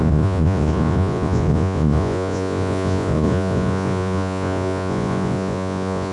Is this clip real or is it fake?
fake